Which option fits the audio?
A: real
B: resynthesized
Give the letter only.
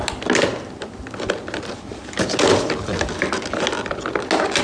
A